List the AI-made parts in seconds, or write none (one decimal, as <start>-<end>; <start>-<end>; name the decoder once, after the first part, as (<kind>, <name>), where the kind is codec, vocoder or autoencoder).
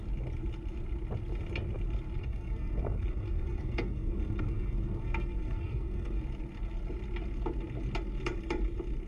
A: 2.2-6.2 (codec, SNAC)